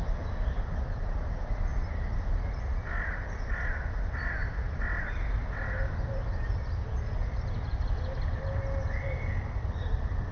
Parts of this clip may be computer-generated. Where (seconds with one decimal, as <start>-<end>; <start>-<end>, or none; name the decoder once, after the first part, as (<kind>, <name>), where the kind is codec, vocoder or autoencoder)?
none